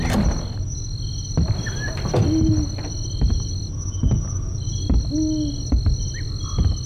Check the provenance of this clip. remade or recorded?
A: recorded